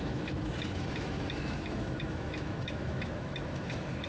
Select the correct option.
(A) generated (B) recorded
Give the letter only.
A